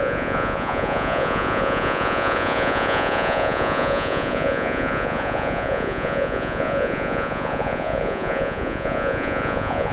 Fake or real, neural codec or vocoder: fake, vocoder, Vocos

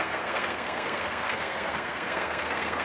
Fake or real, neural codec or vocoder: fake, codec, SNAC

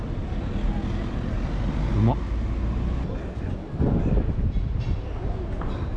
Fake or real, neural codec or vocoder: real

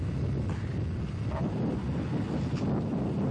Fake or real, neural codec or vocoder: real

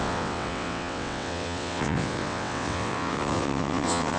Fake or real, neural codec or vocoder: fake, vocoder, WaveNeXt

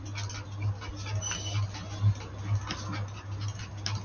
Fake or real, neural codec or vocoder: real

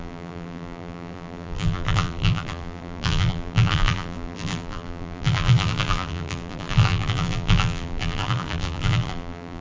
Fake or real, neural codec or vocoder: fake, vocoder, BigVGAN v2